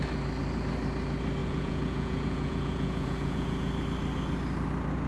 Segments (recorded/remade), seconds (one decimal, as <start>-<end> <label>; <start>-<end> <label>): 0.0-1.4 recorded; 1.4-3.7 remade; 3.7-5.1 recorded